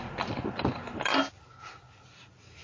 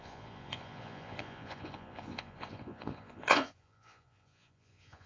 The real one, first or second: first